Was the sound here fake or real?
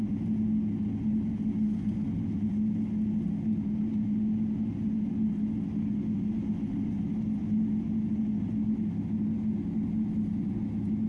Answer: real